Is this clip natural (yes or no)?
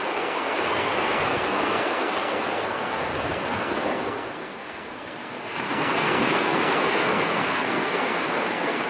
no